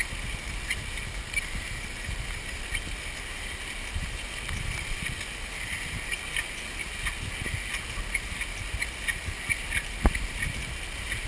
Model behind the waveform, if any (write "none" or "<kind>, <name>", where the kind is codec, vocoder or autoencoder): none